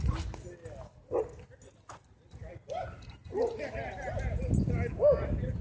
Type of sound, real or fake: real